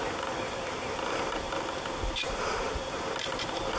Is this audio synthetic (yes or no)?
no